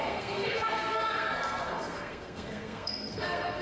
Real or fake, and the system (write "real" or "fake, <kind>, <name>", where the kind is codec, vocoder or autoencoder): fake, codec, SNAC